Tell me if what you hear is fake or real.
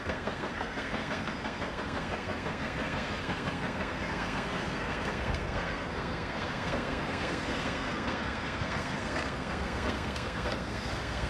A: fake